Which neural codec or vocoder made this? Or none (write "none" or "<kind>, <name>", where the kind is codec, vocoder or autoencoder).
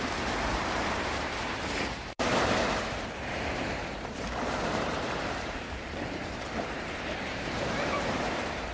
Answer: vocoder, BigVGAN v2